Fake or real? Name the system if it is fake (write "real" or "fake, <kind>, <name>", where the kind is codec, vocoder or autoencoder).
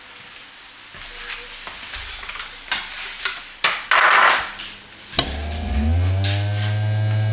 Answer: real